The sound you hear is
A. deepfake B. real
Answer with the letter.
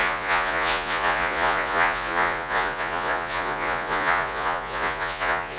A